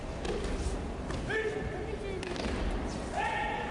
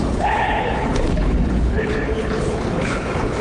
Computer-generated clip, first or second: second